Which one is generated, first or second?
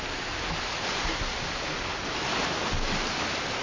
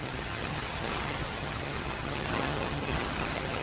second